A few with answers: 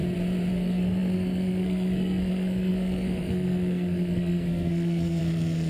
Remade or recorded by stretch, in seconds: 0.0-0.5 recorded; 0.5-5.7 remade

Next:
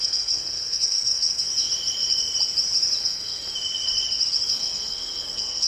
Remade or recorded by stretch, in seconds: 0.0-1.5 remade; 1.5-3.0 recorded; 3.0-3.4 remade; 3.4-4.5 recorded; 4.5-5.7 remade